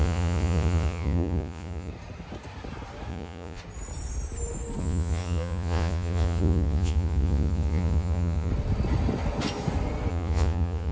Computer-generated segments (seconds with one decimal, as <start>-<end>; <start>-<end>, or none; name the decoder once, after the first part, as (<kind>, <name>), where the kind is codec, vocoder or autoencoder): 0.0-1.9 (vocoder, Vocos); 3.1-3.6; 4.8-8.5; 10.1-10.9

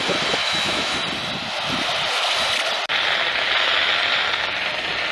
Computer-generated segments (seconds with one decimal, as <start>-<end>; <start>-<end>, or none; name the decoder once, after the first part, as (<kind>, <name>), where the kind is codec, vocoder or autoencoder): 0.4-0.9 (autoencoder, DAC-VAE)

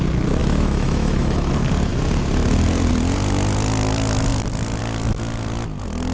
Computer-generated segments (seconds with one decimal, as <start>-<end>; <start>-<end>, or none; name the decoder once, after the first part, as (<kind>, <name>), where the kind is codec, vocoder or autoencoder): 0.4-1.5 (autoencoder, DAC-VAE)